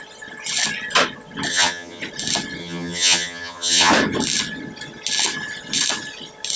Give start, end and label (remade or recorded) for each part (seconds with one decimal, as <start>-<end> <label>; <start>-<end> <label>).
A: 0.0-1.5 recorded; 1.5-2.0 remade; 2.0-2.6 recorded; 2.6-3.9 remade; 3.9-6.6 recorded